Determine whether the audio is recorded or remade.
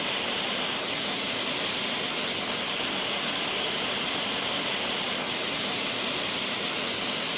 recorded